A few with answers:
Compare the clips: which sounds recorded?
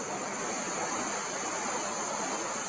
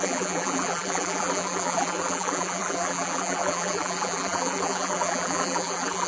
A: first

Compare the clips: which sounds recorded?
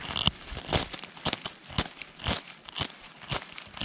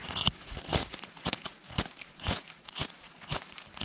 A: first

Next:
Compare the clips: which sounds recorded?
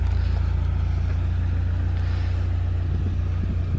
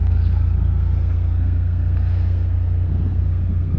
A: first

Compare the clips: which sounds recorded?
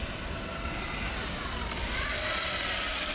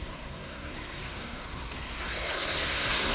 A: first